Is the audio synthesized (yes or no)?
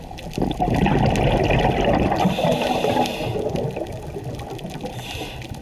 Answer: no